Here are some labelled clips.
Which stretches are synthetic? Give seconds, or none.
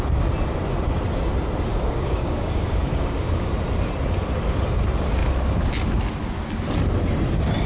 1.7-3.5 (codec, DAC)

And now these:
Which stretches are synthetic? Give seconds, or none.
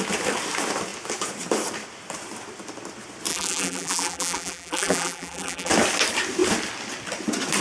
3.3-5.7 (vocoder, BigVGAN v2)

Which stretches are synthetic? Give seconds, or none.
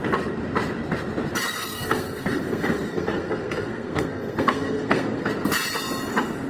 1.6-5.3 (codec, SNAC)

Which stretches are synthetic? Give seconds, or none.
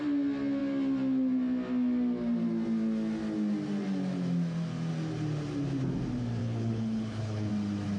6.4-7.5 (codec, HILCodec)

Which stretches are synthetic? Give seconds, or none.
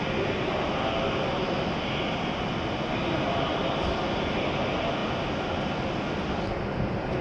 none